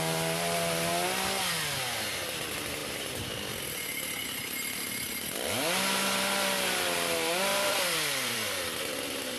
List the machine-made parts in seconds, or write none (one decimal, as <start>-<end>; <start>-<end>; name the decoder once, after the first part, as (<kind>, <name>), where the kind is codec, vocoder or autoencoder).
7.5-9.0 (vocoder, BigVGAN v2)